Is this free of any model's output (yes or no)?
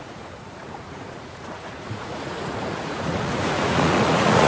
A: no